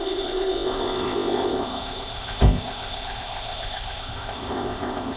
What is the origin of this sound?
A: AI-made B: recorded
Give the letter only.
A